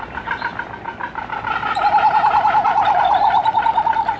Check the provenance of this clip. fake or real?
real